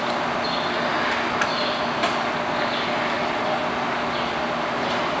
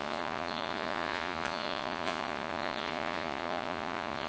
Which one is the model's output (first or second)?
second